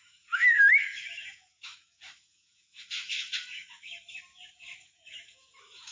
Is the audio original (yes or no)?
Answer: no